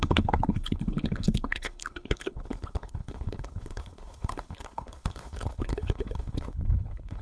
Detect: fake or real fake